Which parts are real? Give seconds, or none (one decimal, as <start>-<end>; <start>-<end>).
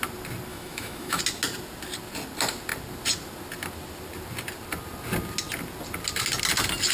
0.0-0.5; 1.2-6.9